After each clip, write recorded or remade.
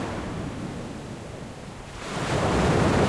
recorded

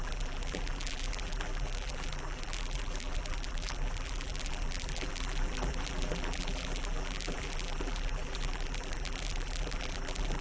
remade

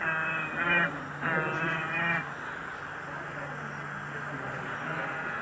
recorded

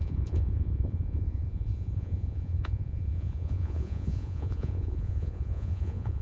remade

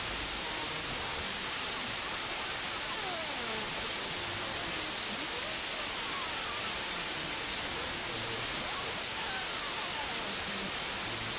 recorded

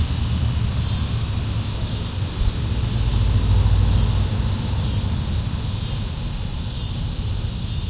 recorded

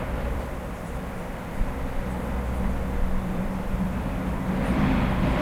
remade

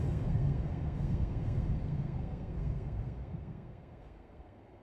remade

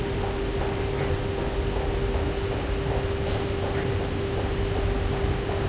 recorded